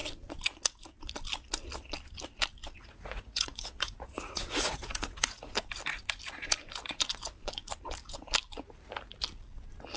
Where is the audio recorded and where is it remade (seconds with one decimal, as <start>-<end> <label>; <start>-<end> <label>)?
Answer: 0.0-2.8 recorded; 2.8-5.5 remade; 5.5-10.0 recorded